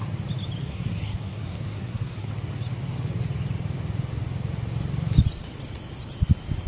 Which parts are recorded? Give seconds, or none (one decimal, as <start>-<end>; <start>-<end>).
0.0-0.6; 2.3-6.7